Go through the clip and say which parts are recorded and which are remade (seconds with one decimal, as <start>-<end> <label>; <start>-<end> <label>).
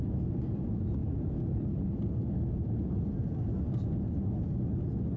0.0-5.2 recorded